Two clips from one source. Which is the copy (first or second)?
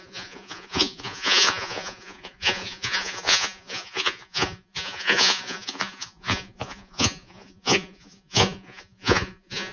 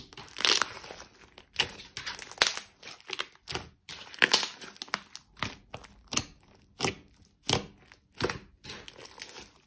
first